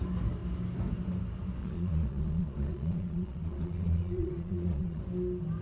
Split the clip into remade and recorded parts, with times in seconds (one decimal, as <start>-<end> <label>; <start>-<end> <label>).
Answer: 0.0-1.6 recorded; 1.6-5.0 remade; 5.0-5.6 recorded